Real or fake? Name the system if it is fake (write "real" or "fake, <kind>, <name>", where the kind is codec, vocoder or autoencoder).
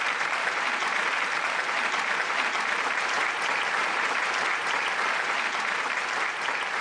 fake, vocoder, BigVGAN v2